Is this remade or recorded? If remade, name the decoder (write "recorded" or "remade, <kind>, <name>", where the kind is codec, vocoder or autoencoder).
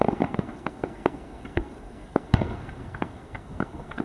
remade, codec, SNAC